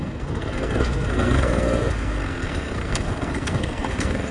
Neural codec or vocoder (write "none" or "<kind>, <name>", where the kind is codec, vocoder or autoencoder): codec, SNAC